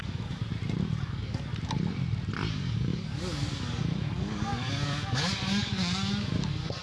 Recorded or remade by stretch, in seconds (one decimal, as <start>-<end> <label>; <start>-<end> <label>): 0.0-0.4 remade; 0.4-1.0 recorded; 1.0-1.5 remade; 1.5-2.5 recorded; 2.5-6.8 remade